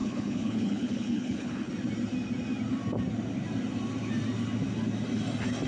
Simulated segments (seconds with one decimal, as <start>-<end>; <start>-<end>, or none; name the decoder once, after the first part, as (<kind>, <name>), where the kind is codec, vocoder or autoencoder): 0.0-1.7 (codec, HILCodec)